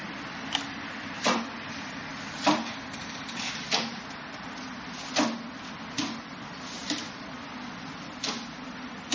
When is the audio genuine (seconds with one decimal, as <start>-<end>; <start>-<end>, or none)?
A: 0.0-9.1